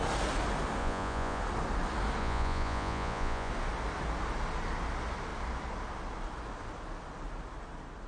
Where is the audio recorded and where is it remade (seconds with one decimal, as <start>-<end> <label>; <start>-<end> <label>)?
0.0-0.8 recorded; 0.8-1.4 remade; 1.4-2.2 recorded; 2.2-3.5 remade; 3.5-8.1 recorded